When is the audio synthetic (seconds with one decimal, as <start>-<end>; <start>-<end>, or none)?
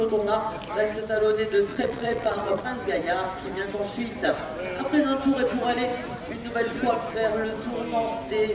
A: 1.7-2.6